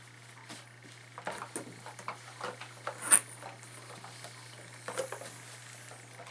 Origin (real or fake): real